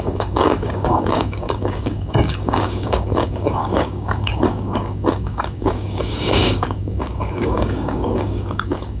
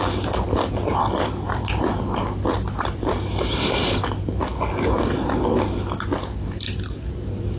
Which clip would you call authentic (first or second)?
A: second